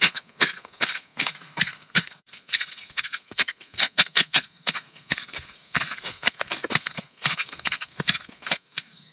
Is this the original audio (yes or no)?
no